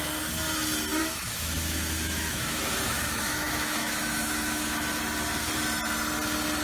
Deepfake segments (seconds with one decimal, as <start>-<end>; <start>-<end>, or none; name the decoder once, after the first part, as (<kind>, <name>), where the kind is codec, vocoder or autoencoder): 1.0-5.0 (autoencoder, DAC-VAE)